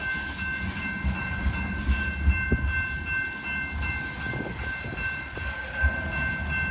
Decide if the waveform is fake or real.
real